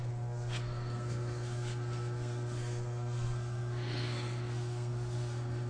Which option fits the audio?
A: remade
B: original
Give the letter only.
A